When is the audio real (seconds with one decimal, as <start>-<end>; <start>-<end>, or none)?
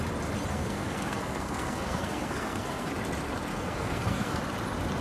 0.0-0.5; 2.9-3.5; 4.4-5.0